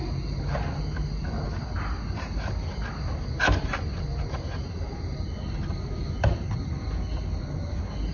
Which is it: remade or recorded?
recorded